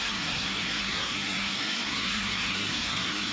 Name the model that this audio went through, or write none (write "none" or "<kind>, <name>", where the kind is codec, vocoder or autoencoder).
codec, SNAC